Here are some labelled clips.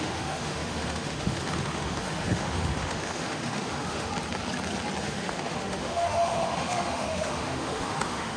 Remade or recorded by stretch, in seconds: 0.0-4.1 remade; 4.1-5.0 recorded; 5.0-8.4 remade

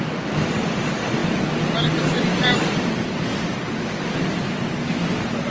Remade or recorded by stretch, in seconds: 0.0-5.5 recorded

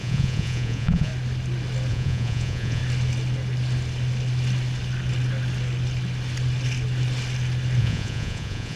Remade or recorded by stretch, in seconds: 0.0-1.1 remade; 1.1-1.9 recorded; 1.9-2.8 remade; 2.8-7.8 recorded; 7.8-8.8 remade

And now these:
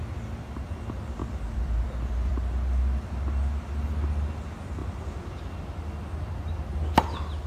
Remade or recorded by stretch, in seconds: 0.0-1.2 recorded; 1.2-2.5 remade; 2.5-7.5 recorded

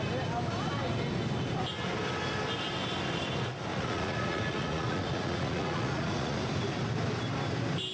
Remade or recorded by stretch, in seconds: 0.0-3.7 recorded; 3.7-6.4 remade; 6.4-7.9 recorded

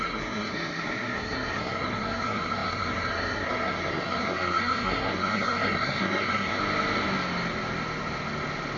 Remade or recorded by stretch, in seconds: 0.0-6.6 remade; 6.6-8.8 recorded

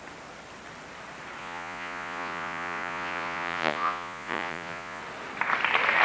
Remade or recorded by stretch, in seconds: 0.0-1.4 recorded; 1.4-5.0 remade; 5.0-6.0 recorded

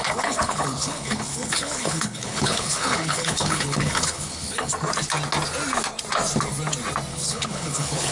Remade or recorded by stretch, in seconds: 0.0-4.7 remade; 4.7-7.1 recorded; 7.1-8.1 remade